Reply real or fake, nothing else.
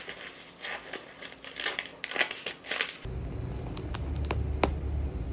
real